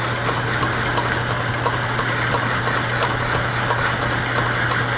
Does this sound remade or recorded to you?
recorded